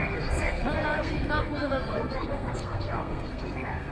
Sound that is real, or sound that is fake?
fake